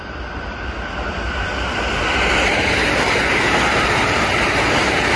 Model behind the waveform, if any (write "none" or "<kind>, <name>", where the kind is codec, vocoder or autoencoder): none